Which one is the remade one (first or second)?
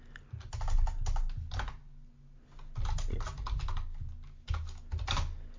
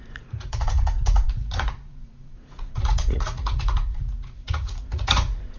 second